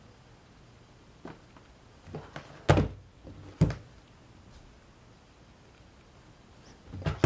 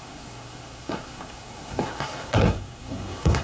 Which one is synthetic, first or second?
second